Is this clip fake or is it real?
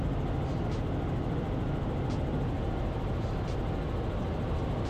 real